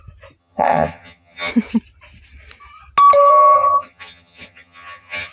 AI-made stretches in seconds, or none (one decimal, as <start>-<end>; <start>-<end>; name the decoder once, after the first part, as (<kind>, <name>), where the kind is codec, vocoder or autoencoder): 0.4-1.5 (vocoder, HiFi-GAN); 3.3-5.3